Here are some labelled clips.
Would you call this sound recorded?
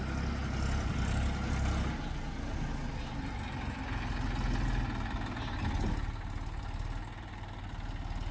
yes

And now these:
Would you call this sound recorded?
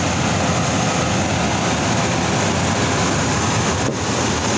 yes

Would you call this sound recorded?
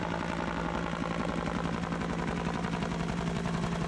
yes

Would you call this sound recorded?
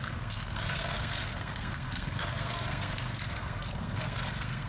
no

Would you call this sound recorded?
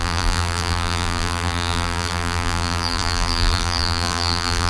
no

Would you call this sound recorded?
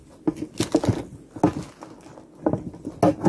yes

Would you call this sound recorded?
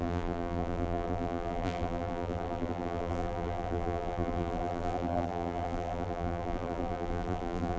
no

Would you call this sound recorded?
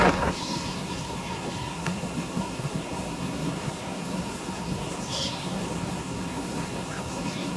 no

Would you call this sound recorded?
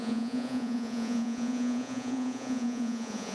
no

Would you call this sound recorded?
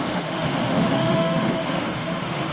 no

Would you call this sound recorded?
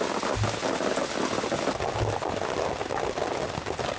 yes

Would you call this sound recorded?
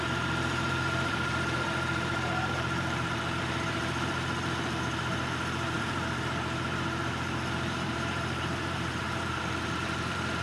no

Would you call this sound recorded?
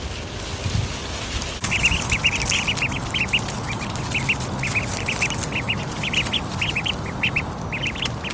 yes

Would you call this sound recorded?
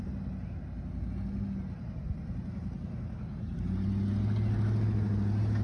yes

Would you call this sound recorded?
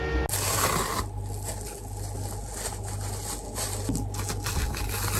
yes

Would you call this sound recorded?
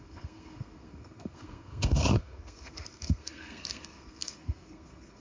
no